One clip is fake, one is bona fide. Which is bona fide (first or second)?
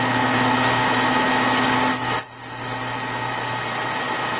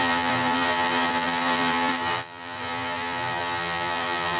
first